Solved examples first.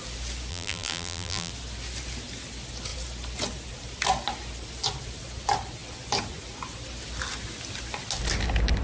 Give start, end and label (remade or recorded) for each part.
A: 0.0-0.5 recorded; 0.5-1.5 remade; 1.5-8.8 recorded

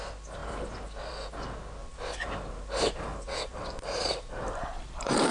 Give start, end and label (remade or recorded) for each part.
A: 0.0-1.8 recorded; 1.8-5.3 remade